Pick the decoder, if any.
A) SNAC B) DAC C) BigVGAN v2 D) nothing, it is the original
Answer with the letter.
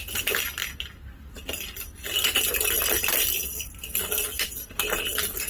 D